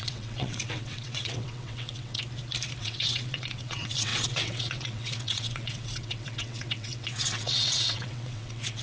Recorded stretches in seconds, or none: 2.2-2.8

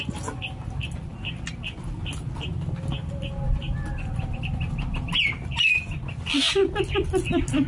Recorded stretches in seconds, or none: 0.0-7.7

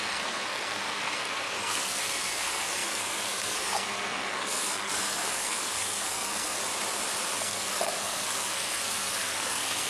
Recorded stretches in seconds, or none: 6.6-7.4

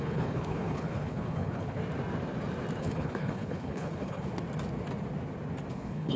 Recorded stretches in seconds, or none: 1.8-2.8; 4.3-5.7